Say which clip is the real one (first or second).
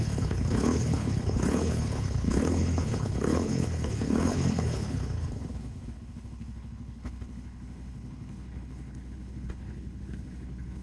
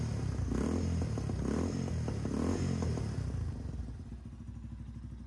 second